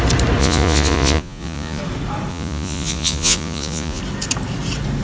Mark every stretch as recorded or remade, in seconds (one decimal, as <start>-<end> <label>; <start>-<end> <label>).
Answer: 0.0-0.4 recorded; 0.4-1.8 remade; 1.8-2.3 recorded; 2.3-4.0 remade; 4.0-5.0 recorded